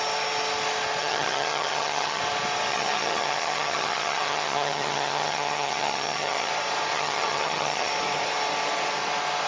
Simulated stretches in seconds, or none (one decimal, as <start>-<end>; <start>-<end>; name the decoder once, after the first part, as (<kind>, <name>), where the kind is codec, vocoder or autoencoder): 1.0-2.2 (vocoder, HiFi-GAN); 2.7-6.5; 6.9-7.9